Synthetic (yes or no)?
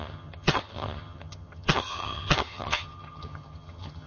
yes